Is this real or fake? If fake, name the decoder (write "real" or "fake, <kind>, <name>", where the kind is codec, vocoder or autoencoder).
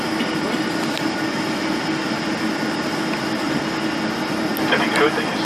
real